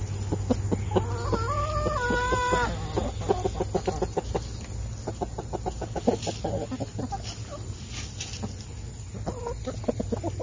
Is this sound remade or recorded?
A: recorded